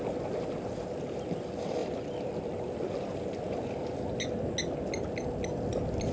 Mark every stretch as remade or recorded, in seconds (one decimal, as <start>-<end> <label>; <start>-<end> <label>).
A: 0.0-6.1 recorded